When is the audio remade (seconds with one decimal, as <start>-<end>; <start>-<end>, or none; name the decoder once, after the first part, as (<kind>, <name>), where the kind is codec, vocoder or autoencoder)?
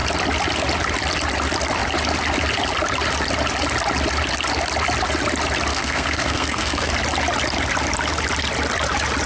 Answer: 5.7-6.9 (codec, SNAC)